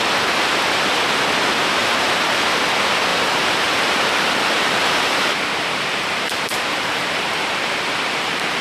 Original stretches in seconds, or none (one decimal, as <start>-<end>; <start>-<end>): 0.0-1.8; 2.6-3.1